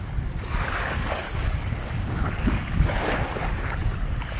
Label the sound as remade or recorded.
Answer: remade